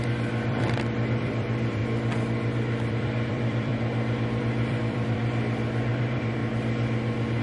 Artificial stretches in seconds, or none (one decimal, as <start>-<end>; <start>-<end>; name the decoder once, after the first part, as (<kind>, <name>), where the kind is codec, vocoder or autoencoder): 0.0-1.8 (vocoder, BigVGAN v2); 2.9-3.7; 4.4-5.2; 6.0-6.4